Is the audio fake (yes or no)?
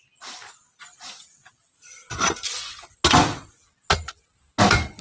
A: no